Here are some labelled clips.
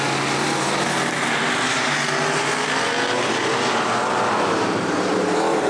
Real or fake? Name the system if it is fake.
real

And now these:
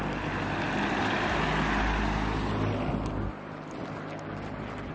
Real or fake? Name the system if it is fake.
real